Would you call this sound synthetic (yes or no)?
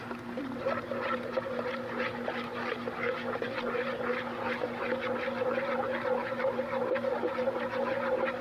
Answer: no